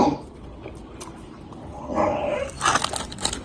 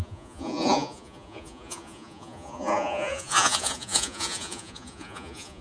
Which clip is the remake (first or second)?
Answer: second